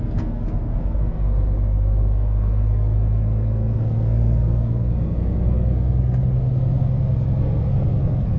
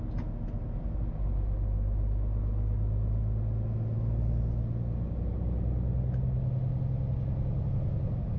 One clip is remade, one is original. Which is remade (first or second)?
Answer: first